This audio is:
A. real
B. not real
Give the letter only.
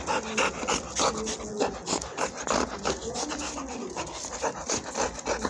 A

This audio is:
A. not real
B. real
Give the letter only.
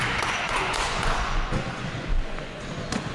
A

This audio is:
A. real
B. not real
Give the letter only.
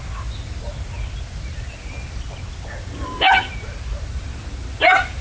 A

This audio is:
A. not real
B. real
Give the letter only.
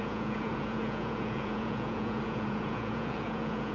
A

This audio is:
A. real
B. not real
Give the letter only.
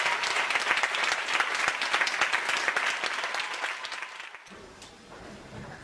A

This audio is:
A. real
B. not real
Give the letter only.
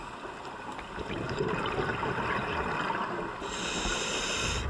A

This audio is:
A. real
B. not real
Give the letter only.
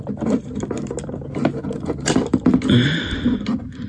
A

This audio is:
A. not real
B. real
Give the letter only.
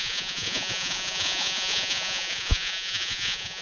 A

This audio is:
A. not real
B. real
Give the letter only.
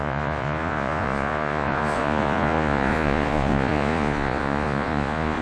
A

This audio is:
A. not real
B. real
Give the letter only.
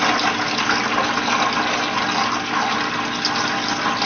B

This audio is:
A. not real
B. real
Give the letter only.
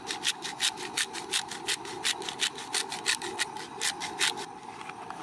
A